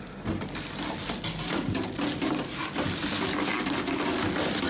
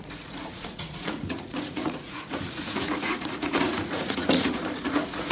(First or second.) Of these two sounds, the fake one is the second